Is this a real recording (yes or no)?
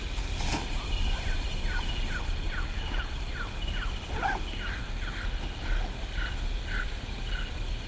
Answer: yes